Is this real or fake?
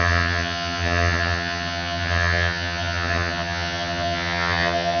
fake